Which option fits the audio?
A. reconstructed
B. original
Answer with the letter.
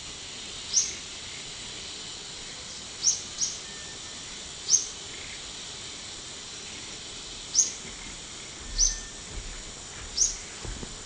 B